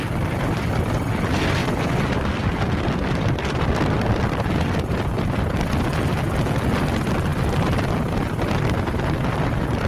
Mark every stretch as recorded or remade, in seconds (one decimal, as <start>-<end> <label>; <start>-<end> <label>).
0.0-1.6 recorded; 1.6-5.6 remade; 5.6-9.9 recorded